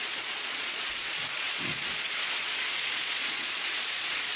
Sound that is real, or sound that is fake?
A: fake